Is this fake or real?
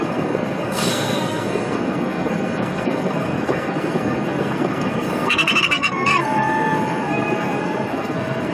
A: fake